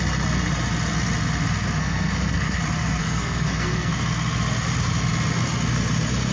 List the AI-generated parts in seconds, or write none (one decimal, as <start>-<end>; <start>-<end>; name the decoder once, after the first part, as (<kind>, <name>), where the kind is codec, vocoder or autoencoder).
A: 1.8-2.6 (codec, SNAC); 3.0-3.9